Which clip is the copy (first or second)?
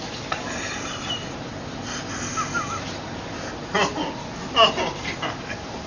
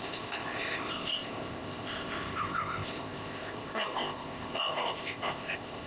second